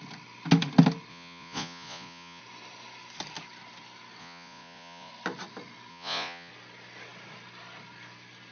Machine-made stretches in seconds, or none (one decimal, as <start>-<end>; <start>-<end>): 1.1-2.4; 4.2-5.1; 5.9-6.5